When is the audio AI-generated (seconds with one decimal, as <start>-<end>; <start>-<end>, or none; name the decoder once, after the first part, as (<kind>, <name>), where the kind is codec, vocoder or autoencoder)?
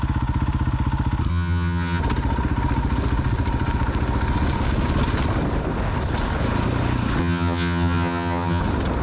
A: 1.3-2.0 (vocoder, HiFi-GAN); 7.2-8.6